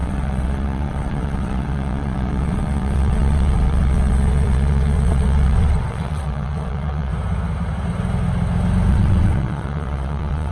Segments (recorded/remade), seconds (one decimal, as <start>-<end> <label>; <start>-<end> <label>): 0.0-7.1 remade; 7.1-8.9 recorded; 8.9-10.5 remade